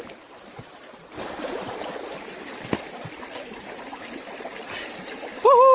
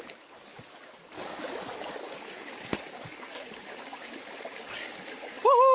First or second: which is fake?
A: second